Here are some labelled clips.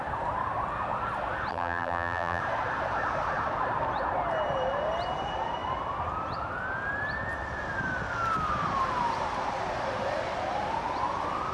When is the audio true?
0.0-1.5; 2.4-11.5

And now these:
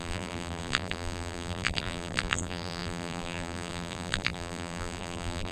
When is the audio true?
none

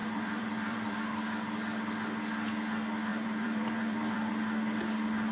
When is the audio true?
1.0-3.1; 4.3-5.3

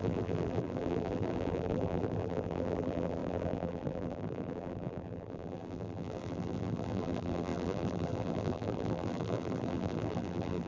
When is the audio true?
none

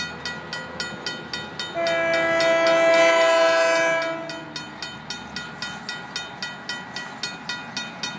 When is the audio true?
0.0-8.2

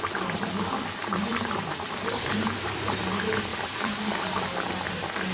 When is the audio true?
0.0-1.0; 3.1-3.5; 4.0-5.3